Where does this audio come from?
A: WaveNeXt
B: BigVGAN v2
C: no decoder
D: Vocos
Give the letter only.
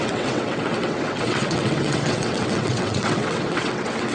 A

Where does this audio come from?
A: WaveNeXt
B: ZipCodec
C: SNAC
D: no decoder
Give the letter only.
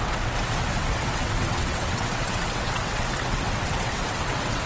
A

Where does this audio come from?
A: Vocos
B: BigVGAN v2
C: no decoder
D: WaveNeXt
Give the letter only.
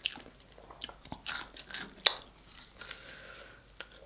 C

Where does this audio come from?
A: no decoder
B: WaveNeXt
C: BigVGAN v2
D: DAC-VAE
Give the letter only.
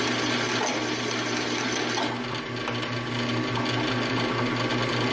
A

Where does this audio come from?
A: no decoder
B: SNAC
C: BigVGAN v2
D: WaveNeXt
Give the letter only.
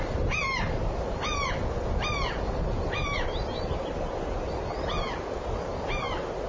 A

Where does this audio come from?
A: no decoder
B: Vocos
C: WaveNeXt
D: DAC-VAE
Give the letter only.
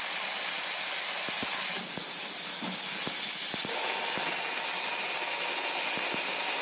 A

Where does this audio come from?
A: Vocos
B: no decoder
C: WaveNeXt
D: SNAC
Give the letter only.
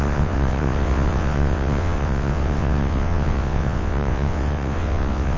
C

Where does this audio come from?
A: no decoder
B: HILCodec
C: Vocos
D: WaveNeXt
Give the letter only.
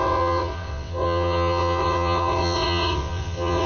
D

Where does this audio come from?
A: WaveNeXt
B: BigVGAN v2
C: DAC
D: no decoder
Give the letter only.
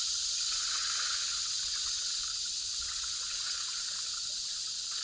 A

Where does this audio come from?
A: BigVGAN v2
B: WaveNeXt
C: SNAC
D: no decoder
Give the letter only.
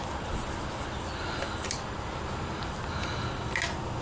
D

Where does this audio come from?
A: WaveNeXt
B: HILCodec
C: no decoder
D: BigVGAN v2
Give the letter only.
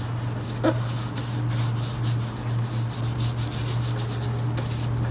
C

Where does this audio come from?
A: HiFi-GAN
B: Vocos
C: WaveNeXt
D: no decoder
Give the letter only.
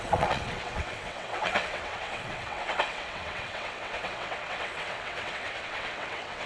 C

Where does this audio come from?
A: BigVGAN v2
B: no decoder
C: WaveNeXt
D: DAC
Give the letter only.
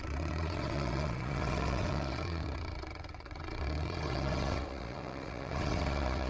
C